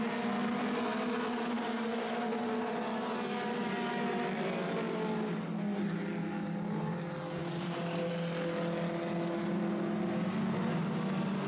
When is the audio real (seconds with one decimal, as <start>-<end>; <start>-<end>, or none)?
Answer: 0.0-7.4; 8.1-11.5